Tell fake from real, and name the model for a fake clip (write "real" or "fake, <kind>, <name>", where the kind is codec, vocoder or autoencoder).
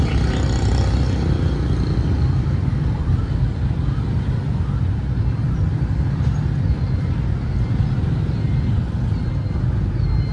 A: real